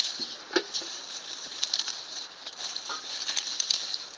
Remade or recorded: remade